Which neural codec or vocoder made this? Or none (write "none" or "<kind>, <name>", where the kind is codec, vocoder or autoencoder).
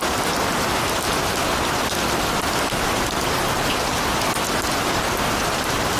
none